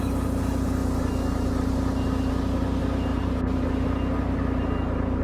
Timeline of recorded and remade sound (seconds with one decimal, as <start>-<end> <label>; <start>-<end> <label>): 0.0-3.1 recorded; 3.1-3.7 remade; 3.7-5.2 recorded

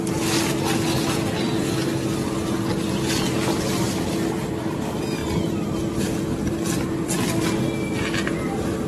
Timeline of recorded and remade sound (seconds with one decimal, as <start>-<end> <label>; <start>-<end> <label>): 0.0-8.9 recorded

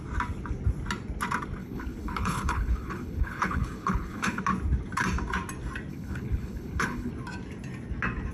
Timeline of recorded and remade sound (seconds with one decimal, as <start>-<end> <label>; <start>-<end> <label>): 0.0-1.6 recorded; 1.6-4.4 remade; 4.4-5.9 recorded; 5.9-7.1 remade; 7.1-8.3 recorded

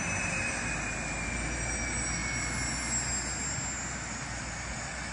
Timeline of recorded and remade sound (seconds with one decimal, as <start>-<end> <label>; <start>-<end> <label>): 0.0-5.1 recorded

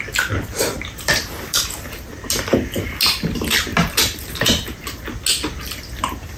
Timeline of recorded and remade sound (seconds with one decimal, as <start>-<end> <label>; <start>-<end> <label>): 0.0-0.6 recorded; 0.6-1.4 remade; 1.4-3.7 recorded; 3.7-5.0 remade; 5.0-6.4 recorded